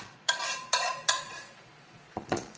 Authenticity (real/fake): fake